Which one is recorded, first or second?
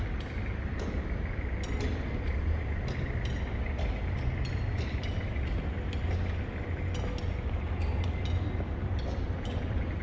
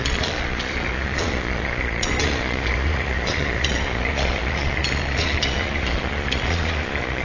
first